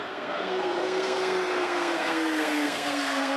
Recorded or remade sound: remade